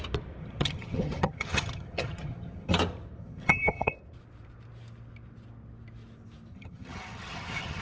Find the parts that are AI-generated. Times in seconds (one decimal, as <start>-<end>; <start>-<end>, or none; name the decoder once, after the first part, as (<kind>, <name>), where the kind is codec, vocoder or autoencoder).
0.4-2.7 (vocoder, HiFi-GAN); 3.2-3.9; 6.5-7.8